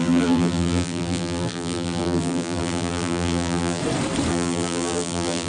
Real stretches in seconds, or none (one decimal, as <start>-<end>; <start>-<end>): 3.8-4.3

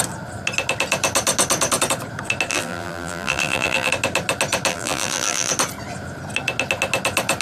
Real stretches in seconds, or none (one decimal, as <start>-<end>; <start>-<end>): 0.0-2.5; 3.9-4.7; 5.5-7.4

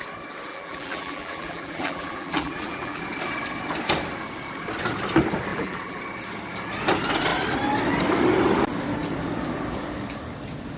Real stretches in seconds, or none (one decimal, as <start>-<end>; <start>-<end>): 0.0-0.5; 3.0-5.5; 6.0-10.8

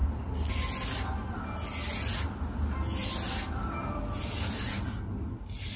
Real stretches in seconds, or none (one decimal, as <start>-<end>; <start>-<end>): 0.5-3.0; 4.0-5.8

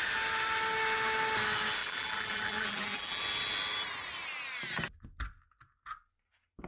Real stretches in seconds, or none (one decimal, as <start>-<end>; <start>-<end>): 0.0-1.8; 3.2-6.7

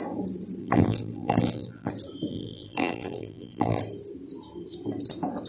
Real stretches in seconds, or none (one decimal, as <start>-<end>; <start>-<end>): 0.0-0.6; 1.9-2.3; 3.8-5.5